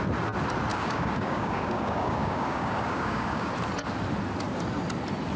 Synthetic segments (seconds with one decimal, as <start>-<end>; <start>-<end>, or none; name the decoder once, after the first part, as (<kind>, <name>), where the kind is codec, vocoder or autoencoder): 0.7-3.5 (codec, DAC)